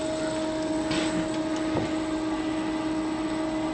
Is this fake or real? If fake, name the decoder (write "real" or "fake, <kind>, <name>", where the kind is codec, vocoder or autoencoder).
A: real